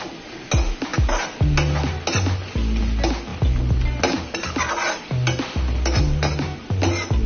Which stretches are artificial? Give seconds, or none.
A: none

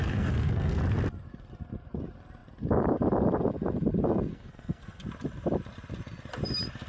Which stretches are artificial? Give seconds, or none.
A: 0.0-0.8 (codec, SNAC); 4.3-5.0

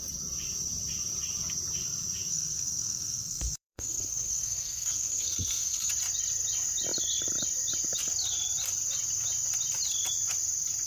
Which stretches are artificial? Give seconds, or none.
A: 2.3-5.9 (codec, SNAC)

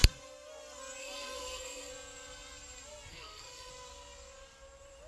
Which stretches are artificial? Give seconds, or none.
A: 1.0-1.9 (codec, SNAC); 3.1-3.7

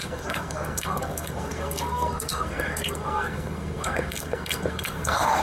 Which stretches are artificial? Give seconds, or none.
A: 0.0-5.4 (codec, SNAC)